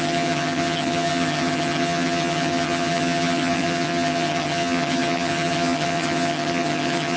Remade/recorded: remade